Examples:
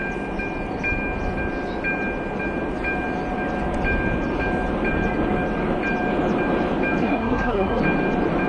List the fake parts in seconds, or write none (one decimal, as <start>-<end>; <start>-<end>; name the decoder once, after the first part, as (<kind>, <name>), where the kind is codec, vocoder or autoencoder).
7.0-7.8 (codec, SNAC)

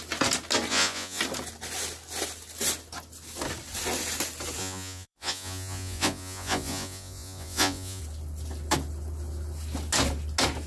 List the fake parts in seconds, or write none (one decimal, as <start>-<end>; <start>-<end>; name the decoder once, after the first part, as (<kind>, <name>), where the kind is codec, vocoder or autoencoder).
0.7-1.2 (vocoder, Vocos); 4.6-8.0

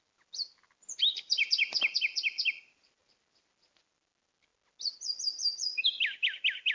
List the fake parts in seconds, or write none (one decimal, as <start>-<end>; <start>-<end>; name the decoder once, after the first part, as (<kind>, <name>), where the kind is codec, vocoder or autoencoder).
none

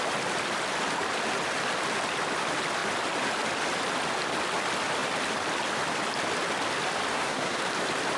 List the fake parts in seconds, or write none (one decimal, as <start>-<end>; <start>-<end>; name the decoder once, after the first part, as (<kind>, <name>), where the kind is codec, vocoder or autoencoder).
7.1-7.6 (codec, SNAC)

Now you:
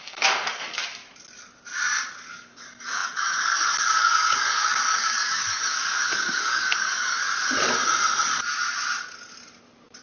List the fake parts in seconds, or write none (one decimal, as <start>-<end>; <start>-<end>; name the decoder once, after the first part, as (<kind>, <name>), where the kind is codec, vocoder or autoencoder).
0.0-1.0 (codec, DAC); 2.3-7.3

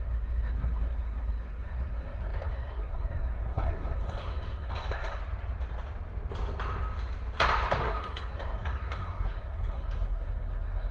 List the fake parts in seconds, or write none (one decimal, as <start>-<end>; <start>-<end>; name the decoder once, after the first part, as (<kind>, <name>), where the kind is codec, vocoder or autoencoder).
0.0-5.2 (codec, SNAC); 7.8-10.9

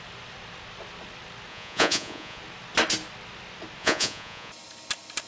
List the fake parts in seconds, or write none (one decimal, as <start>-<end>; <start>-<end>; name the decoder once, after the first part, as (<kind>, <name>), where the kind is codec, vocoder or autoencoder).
1.5-2.4 (vocoder, Vocos); 3.8-4.5